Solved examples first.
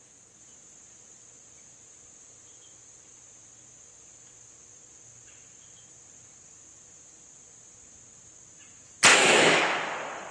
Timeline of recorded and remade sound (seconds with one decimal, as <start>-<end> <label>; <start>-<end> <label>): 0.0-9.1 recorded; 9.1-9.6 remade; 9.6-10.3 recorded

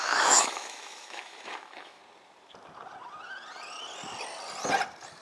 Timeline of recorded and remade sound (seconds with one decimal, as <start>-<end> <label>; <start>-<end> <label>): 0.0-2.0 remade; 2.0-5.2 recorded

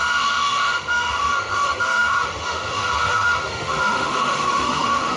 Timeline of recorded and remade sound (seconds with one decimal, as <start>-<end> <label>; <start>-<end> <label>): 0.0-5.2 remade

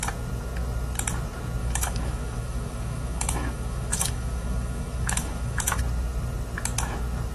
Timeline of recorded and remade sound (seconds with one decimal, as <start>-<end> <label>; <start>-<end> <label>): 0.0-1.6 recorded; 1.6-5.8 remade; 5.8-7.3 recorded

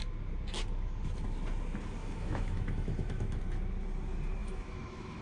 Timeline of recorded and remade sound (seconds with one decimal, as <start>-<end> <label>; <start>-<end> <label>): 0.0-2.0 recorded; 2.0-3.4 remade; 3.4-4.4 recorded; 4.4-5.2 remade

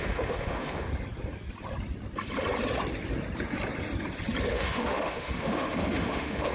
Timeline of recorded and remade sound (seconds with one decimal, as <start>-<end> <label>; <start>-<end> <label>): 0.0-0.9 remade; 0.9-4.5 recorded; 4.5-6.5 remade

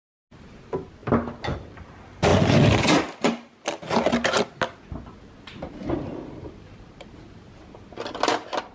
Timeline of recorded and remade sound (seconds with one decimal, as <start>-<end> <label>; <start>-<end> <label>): 0.0-8.7 recorded